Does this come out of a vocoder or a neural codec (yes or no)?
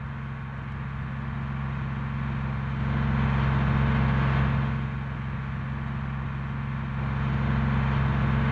no